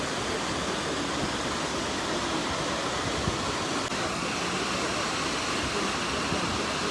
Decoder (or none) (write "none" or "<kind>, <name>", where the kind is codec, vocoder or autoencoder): none